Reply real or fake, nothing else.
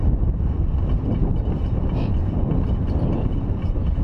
real